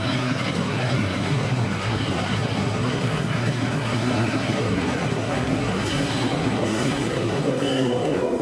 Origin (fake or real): fake